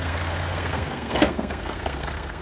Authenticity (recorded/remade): remade